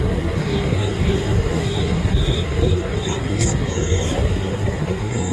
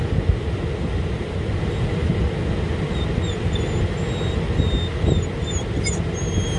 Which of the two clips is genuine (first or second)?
second